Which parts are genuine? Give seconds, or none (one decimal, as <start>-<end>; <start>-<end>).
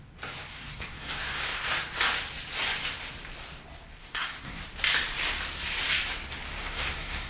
0.0-0.5; 1.6-4.0; 4.6-6.6